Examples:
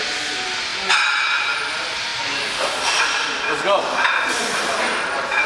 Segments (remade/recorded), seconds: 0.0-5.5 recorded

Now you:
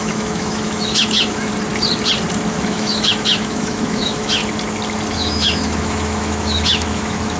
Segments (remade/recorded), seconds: 0.0-1.5 remade; 1.5-2.5 recorded; 2.5-4.4 remade; 4.4-5.1 recorded; 5.1-7.4 remade

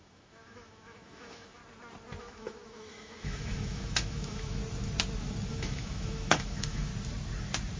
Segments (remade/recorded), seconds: 0.0-1.6 remade; 1.6-2.2 recorded; 2.2-4.6 remade; 4.6-5.5 recorded; 5.5-6.9 remade; 6.9-7.8 recorded

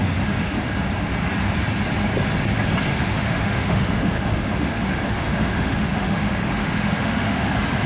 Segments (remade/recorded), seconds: 0.0-2.9 recorded; 2.9-7.5 remade; 7.5-7.9 recorded

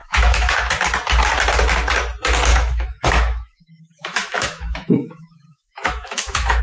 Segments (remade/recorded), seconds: 0.0-0.7 remade; 0.7-2.5 recorded; 2.5-6.6 remade

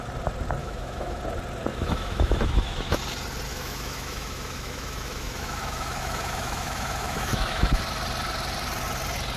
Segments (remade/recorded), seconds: 0.0-0.6 recorded; 0.6-1.2 remade; 1.2-1.7 recorded; 1.7-3.0 remade; 3.0-3.5 recorded; 3.5-7.8 remade; 7.8-9.4 recorded

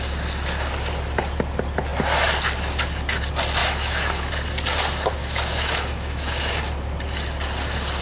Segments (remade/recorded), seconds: 0.0-3.6 recorded; 3.6-4.3 remade; 4.3-5.2 recorded; 5.2-6.6 remade; 6.6-8.0 recorded

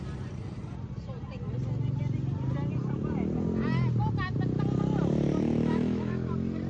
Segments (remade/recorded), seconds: 0.0-5.6 recorded; 5.6-6.3 remade; 6.3-6.7 recorded